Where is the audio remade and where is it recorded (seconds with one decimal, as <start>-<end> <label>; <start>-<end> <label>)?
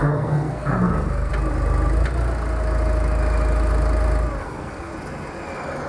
0.0-1.3 remade; 1.3-4.4 recorded; 4.4-4.9 remade; 4.9-5.9 recorded